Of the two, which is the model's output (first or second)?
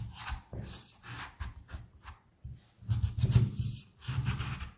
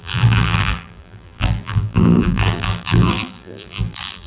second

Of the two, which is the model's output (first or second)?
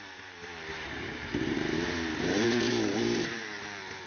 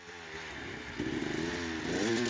first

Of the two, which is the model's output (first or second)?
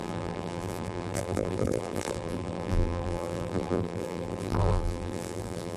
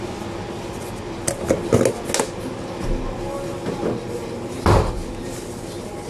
first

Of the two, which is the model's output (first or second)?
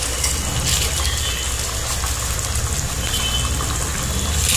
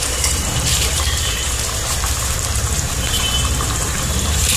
second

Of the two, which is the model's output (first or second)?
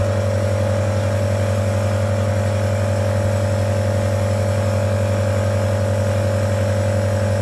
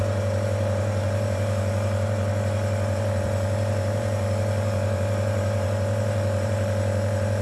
second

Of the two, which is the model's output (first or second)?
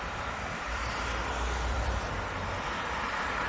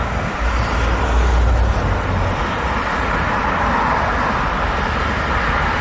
first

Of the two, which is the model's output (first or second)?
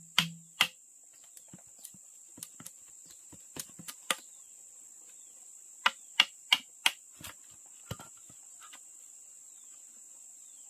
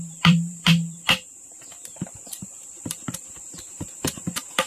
second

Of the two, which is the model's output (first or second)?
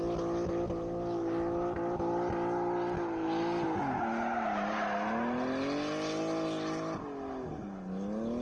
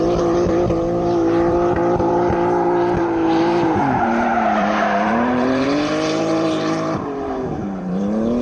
second